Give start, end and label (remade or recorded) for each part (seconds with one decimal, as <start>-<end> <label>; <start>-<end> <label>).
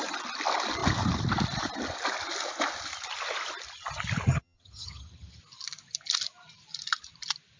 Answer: 0.0-4.3 recorded; 4.3-5.4 remade; 5.4-7.6 recorded